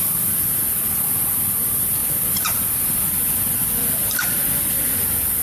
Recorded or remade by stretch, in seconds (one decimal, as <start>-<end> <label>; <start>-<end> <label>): 0.0-2.0 recorded; 2.0-2.6 remade; 2.6-3.6 recorded; 3.6-4.4 remade; 4.4-5.4 recorded